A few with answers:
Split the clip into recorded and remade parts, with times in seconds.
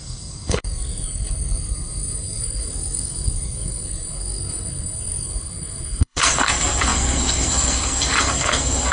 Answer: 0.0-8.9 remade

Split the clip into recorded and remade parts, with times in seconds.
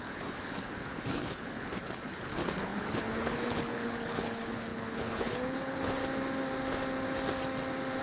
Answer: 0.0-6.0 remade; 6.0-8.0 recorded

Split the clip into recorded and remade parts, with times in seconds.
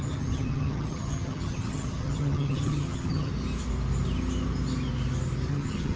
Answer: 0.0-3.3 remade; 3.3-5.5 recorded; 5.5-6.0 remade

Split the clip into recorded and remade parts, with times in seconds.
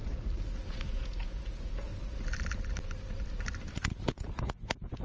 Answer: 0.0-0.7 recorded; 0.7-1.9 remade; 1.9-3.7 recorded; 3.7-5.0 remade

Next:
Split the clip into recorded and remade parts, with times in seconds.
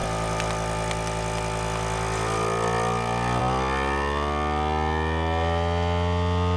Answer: 0.0-6.6 recorded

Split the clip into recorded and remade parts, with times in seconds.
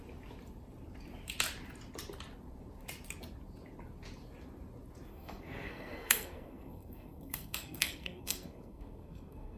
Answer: 0.0-5.1 recorded; 5.1-9.6 remade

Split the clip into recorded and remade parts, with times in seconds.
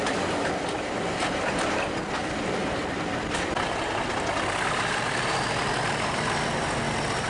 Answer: 0.0-7.3 recorded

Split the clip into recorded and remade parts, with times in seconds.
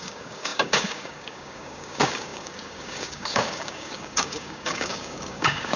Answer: 0.0-5.8 remade